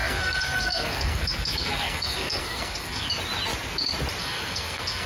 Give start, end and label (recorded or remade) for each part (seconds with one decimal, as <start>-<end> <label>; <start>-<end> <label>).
0.0-3.1 remade; 3.1-4.2 recorded; 4.2-5.1 remade